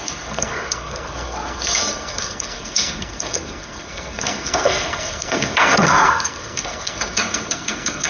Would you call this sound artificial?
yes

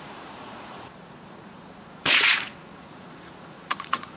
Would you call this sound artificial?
yes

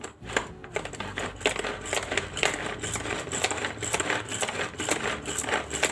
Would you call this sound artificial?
no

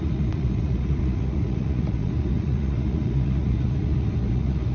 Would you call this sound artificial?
yes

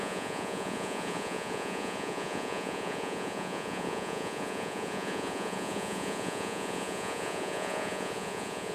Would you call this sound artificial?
yes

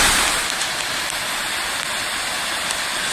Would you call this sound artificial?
no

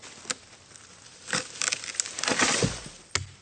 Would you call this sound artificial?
no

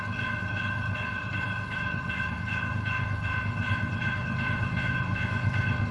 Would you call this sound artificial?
yes